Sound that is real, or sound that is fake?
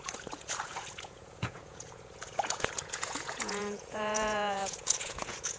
fake